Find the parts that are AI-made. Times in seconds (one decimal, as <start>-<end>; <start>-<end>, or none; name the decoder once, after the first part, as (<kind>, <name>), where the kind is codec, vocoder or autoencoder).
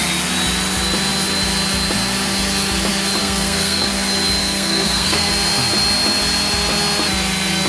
3.2-3.9 (codec, SNAC); 4.4-5.3